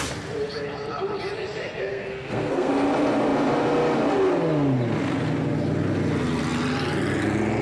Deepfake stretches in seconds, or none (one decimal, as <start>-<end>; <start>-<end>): 1.9-2.7